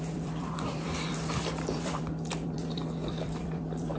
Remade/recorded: remade